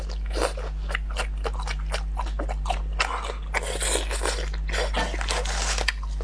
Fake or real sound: real